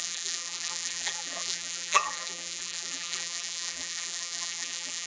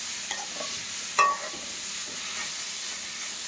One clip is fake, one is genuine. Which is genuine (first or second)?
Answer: second